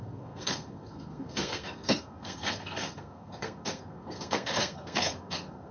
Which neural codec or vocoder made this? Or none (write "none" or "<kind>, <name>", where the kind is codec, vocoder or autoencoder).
codec, SNAC